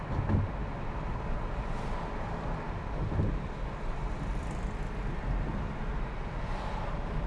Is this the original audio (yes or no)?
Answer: yes